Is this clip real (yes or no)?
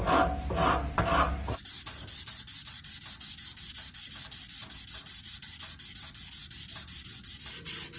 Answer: yes